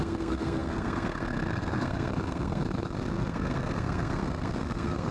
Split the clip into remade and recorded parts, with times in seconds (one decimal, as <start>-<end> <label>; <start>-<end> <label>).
0.0-5.1 remade